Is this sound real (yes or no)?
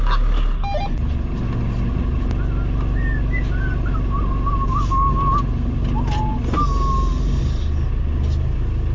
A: yes